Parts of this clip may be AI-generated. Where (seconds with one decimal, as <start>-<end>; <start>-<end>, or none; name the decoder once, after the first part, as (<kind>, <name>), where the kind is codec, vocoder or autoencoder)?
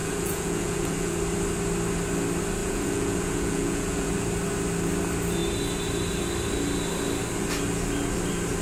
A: 0.0-1.2 (vocoder, Vocos); 2.6-4.1